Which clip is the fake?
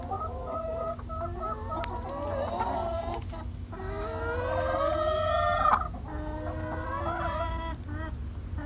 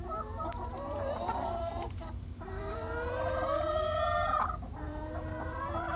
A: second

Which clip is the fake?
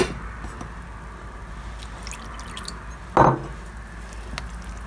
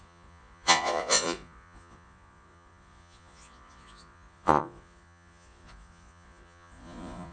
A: second